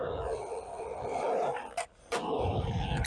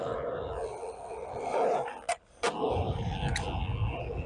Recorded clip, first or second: second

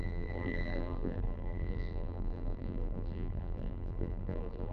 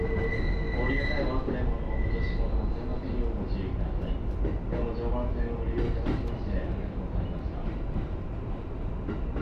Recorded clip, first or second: second